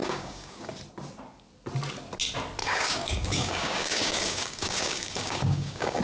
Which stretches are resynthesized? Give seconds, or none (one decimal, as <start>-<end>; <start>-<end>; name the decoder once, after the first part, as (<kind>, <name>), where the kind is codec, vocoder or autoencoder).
0.0-0.7 (codec, DAC); 2.6-6.0